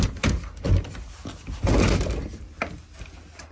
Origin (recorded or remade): recorded